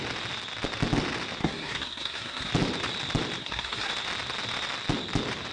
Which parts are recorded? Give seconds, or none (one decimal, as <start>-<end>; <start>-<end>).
0.0-1.4; 2.5-3.4; 3.9-5.5